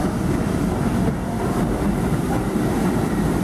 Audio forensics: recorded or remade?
remade